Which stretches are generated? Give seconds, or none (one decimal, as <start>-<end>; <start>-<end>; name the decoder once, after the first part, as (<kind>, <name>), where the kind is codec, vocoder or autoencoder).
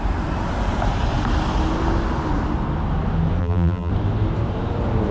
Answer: 3.4-3.9 (vocoder, BigVGAN v2)